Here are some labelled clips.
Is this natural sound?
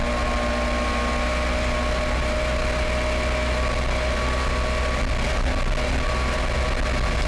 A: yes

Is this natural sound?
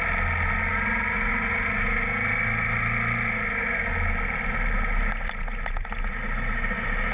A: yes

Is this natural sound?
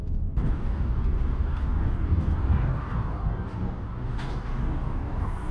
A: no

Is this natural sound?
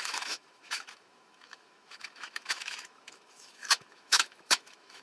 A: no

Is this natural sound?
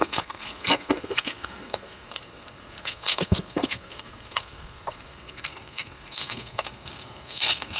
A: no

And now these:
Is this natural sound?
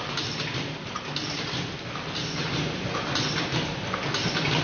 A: yes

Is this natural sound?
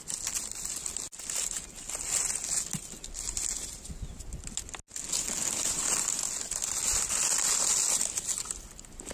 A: yes